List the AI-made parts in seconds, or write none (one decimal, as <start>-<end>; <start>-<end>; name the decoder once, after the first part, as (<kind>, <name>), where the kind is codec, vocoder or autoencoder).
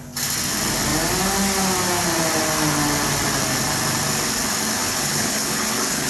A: 4.8-6.1 (codec, HILCodec)